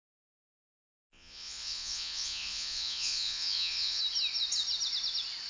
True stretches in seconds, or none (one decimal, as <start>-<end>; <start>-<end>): 0.0-0.7; 4.0-5.5